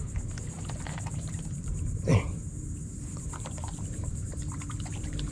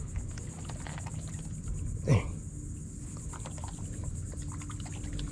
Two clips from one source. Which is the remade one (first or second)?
first